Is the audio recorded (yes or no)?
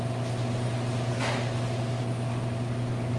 yes